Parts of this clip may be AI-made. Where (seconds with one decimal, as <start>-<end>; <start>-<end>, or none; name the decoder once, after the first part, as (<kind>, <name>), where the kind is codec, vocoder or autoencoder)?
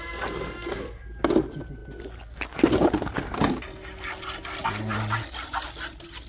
none